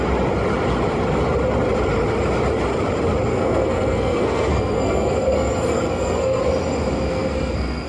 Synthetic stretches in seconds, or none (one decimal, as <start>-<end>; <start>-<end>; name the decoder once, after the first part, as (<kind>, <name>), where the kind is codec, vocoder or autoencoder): 3.3-6.4 (codec, SNAC); 7.1-7.9